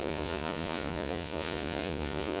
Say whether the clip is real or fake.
fake